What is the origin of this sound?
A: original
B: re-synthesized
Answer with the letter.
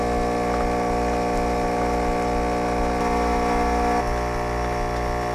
A